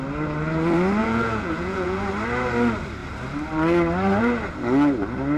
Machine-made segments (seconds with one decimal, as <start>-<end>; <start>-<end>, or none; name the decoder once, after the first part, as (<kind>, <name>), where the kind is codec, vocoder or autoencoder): 1.0-2.1 (vocoder, Vocos)